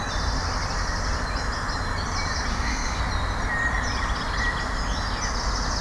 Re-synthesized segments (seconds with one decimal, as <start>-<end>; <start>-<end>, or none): 2.5-3.0